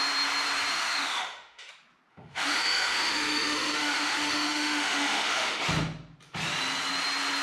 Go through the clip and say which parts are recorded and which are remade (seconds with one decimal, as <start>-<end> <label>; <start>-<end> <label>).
0.0-0.7 recorded; 0.7-1.7 remade; 1.7-2.1 recorded; 2.1-5.6 remade; 5.6-7.4 recorded